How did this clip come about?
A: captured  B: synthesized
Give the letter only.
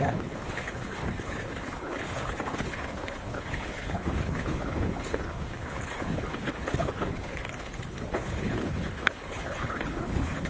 B